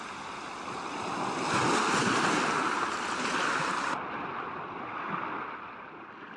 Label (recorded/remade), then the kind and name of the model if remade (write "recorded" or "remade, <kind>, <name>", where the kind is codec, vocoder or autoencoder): recorded